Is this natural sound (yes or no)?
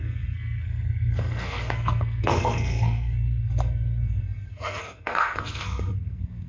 no